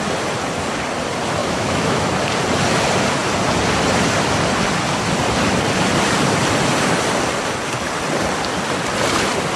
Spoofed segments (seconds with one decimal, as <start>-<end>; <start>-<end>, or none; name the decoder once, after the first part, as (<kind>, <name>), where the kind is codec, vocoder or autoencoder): 1.4-2.1 (autoencoder, DAC-VAE)